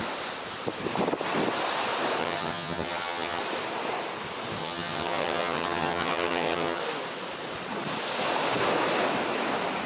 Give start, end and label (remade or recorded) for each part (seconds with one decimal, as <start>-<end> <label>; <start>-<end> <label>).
0.0-2.2 recorded; 2.2-3.4 remade; 3.4-4.6 recorded; 4.6-6.8 remade; 6.8-9.9 recorded